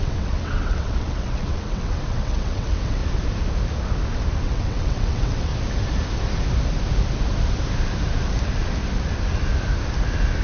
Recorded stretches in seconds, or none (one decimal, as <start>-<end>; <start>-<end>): 3.0-4.4; 5.5-10.4